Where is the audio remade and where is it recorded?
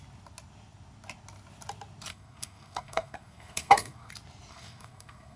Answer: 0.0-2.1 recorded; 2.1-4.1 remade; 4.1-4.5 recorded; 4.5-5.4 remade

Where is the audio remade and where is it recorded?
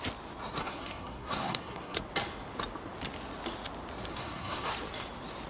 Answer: 0.0-0.6 recorded; 0.6-2.0 remade; 2.0-4.1 recorded; 4.1-4.7 remade; 4.7-5.5 recorded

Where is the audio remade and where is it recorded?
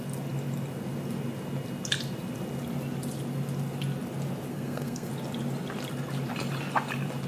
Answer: 0.0-4.5 recorded; 4.5-5.1 remade; 5.1-7.3 recorded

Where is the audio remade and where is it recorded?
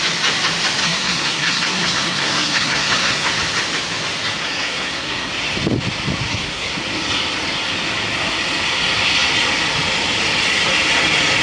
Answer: 0.0-0.8 recorded; 0.8-3.3 remade; 3.3-4.4 recorded; 4.4-5.3 remade; 5.3-6.3 recorded; 6.3-6.8 remade; 6.8-11.4 recorded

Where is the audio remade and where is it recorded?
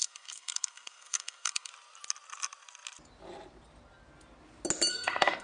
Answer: 0.0-1.7 remade; 1.7-4.9 recorded; 4.9-5.4 remade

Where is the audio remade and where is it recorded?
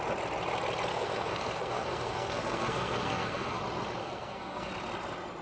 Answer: 0.0-0.9 recorded; 0.9-3.6 remade; 3.6-4.0 recorded; 4.0-4.7 remade; 4.7-5.4 recorded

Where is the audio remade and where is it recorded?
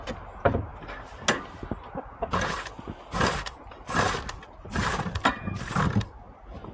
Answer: 0.0-6.7 recorded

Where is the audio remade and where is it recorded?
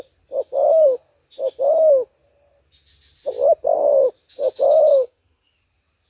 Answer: 0.0-4.9 recorded; 4.9-5.5 remade; 5.5-6.1 recorded